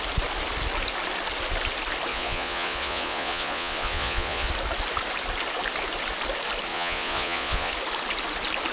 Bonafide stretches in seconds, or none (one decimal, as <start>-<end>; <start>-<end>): 0.0-2.1; 4.5-6.7; 7.7-8.7